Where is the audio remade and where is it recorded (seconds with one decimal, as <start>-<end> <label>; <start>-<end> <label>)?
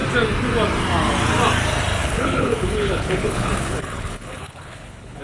0.0-2.0 recorded; 2.0-5.2 remade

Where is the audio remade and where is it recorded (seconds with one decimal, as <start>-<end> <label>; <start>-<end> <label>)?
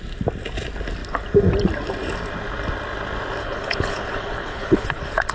0.0-3.4 recorded; 3.4-5.3 remade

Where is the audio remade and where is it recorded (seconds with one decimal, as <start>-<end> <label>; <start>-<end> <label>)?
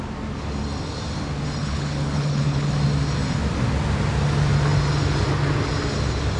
0.0-1.6 recorded; 1.6-2.7 remade; 2.7-6.4 recorded